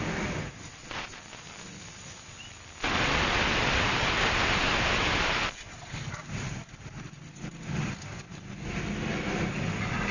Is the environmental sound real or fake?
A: real